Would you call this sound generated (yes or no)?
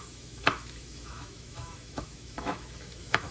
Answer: yes